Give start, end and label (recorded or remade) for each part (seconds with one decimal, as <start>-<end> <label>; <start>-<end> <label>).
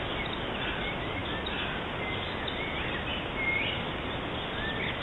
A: 0.0-5.0 recorded